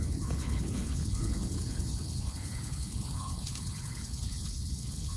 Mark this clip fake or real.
fake